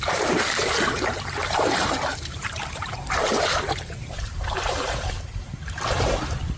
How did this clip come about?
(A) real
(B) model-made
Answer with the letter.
B